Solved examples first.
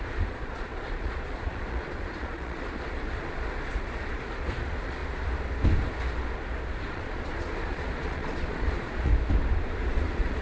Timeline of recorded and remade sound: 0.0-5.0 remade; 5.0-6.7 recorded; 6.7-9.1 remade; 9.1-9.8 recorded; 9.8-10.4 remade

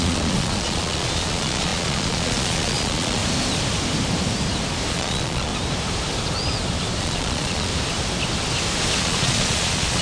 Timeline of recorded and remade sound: 0.0-3.2 remade; 3.2-4.9 recorded; 4.9-5.5 remade; 5.5-7.0 recorded; 7.0-7.7 remade; 7.7-9.0 recorded; 9.0-10.0 remade

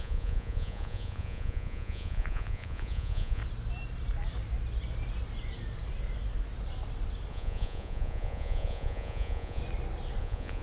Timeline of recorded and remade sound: 0.0-3.4 remade; 3.4-7.3 recorded; 7.3-9.6 remade; 9.6-10.2 recorded; 10.2-10.6 remade

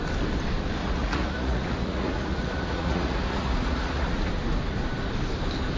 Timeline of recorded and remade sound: 0.0-0.8 recorded; 0.8-4.3 remade; 4.3-5.8 recorded

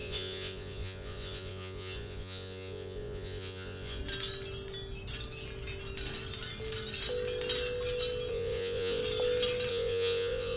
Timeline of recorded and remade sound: 0.0-4.0 remade; 4.0-8.3 recorded; 8.3-9.0 remade; 9.0-9.7 recorded; 9.7-10.6 remade